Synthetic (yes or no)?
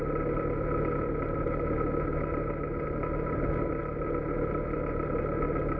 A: no